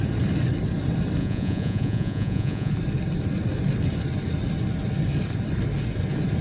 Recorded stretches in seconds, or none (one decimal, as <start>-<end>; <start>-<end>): 0.0-1.2; 2.7-6.4